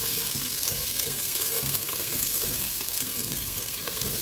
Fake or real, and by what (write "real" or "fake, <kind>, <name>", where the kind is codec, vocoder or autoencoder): fake, codec, SNAC